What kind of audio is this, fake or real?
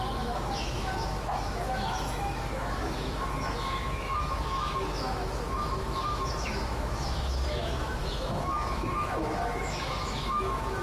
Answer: fake